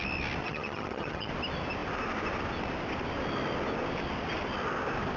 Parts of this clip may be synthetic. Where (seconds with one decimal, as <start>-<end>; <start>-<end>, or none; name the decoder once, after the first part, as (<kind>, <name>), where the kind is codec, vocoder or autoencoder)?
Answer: 0.4-1.3 (vocoder, HiFi-GAN)